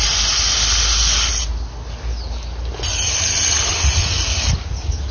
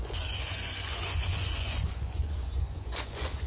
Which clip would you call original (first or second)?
first